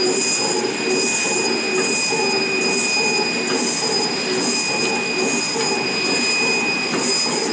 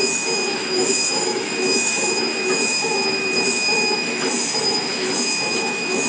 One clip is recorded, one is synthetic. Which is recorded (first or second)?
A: first